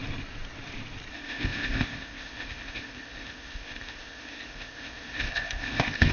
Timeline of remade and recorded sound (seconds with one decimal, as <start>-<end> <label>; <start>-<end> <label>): 0.0-1.1 recorded; 1.1-6.1 remade